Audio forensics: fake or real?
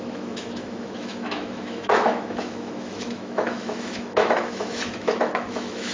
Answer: fake